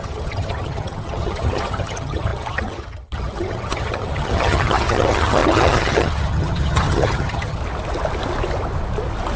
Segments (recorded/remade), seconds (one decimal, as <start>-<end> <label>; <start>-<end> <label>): 0.0-7.6 remade; 7.6-9.4 recorded

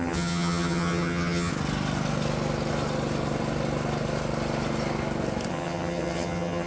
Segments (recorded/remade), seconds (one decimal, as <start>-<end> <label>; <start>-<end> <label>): 0.0-1.5 remade; 1.5-5.5 recorded; 5.5-6.7 remade

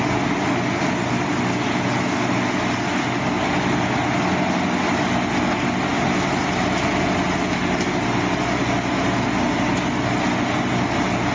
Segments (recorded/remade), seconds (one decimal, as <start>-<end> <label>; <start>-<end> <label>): 0.0-11.3 recorded

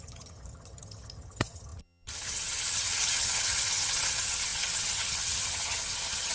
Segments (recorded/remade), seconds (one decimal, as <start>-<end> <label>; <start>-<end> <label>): 0.0-6.3 remade

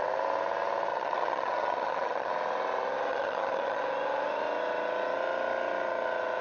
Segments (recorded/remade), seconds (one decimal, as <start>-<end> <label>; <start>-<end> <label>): 0.0-0.9 recorded; 0.9-2.3 remade; 2.3-3.1 recorded; 3.1-3.8 remade; 3.8-6.4 recorded

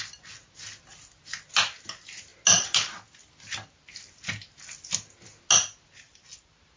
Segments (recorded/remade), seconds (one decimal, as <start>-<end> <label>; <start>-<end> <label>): 0.0-6.8 recorded

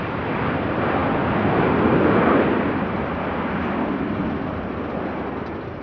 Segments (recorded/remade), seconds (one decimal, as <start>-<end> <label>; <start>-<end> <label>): 0.0-5.8 recorded